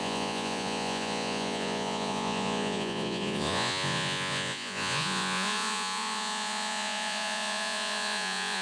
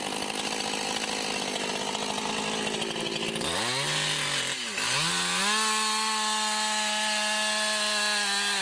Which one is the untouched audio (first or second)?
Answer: second